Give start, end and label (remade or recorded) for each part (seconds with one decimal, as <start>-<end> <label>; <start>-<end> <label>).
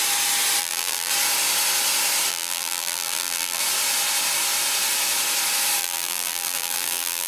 0.0-0.6 recorded; 0.6-1.1 remade; 1.1-2.3 recorded; 2.3-3.6 remade; 3.6-5.8 recorded; 5.8-7.3 remade